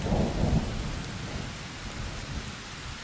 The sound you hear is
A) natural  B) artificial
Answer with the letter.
A